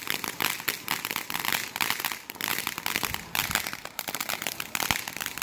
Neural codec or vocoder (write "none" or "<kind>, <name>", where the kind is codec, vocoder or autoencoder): vocoder, BigVGAN v2